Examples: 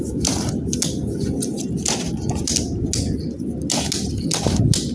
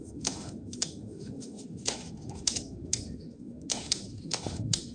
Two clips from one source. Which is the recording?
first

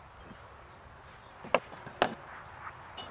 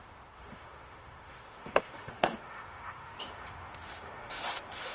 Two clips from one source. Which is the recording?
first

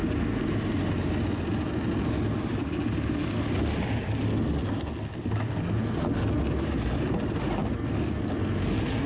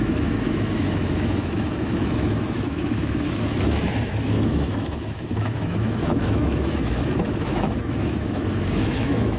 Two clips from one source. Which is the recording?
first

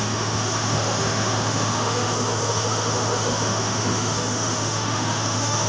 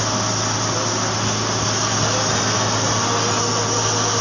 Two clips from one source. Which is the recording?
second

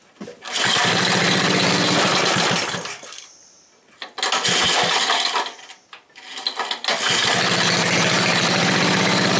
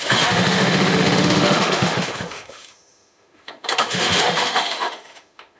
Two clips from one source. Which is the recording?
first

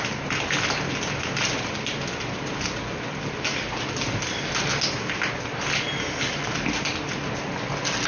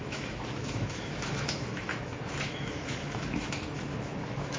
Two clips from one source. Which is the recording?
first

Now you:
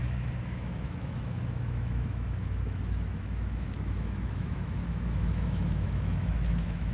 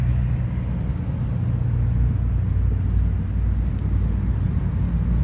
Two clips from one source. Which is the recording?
second